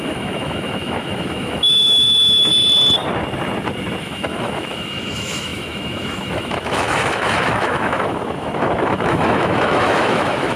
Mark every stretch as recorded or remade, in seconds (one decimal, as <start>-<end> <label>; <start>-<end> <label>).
0.0-2.5 remade; 2.5-4.0 recorded; 4.0-10.6 remade